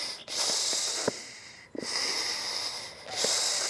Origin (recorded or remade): recorded